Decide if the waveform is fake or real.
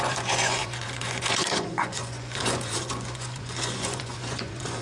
fake